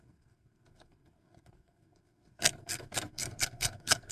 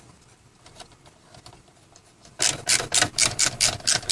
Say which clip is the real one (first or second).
second